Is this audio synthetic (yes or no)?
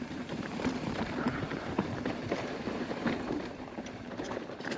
yes